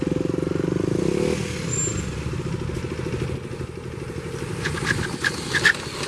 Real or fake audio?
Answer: real